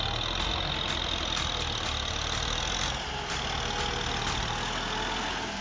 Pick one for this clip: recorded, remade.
recorded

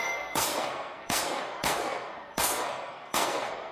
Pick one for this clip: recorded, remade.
remade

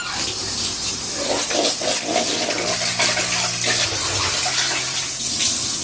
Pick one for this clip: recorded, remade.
recorded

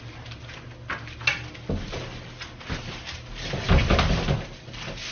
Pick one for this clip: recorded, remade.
recorded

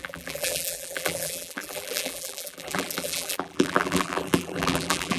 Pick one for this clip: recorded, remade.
remade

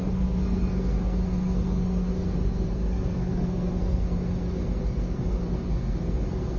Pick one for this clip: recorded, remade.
remade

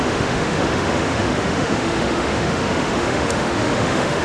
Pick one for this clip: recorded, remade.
remade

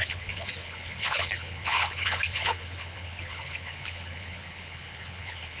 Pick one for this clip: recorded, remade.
remade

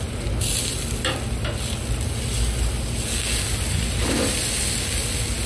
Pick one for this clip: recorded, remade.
recorded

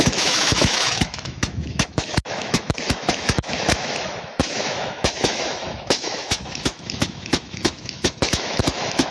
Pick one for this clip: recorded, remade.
remade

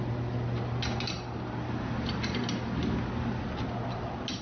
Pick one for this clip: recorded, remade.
recorded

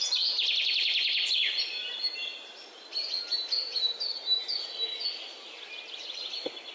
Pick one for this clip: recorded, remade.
recorded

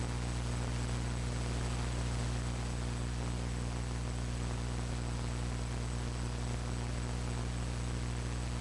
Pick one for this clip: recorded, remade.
recorded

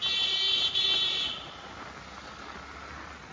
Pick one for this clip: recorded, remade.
recorded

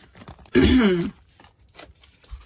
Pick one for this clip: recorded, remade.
recorded